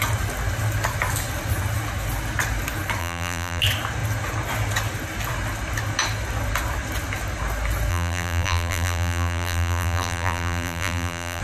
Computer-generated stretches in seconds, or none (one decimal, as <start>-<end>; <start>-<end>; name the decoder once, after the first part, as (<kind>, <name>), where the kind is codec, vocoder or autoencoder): 3.0-3.6 (vocoder, BigVGAN v2); 7.9-11.4